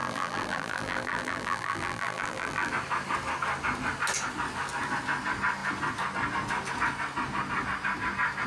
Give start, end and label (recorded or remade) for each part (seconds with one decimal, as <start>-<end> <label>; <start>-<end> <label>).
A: 0.0-2.7 remade; 2.7-8.5 recorded